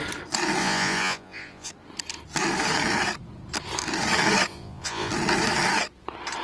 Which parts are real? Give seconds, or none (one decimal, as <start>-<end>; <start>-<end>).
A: 0.0-0.6; 1.7-4.5; 5.1-6.4